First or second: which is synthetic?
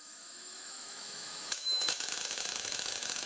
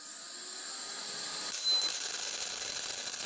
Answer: first